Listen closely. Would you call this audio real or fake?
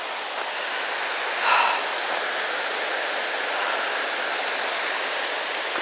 real